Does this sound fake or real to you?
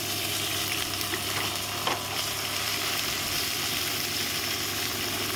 fake